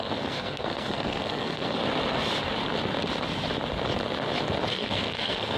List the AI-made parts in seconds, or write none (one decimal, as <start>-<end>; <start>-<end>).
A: 0.0-1.8; 4.7-5.6